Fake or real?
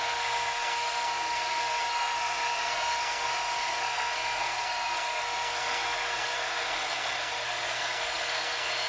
fake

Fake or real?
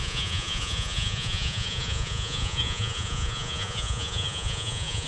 fake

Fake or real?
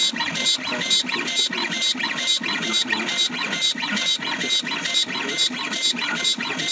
real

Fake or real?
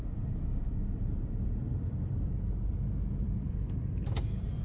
fake